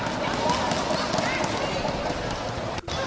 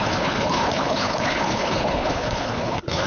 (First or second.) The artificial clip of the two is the second